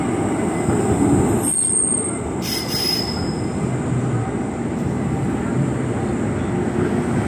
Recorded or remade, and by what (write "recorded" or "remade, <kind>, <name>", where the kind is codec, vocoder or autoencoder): recorded